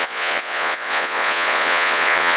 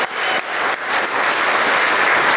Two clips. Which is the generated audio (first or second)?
first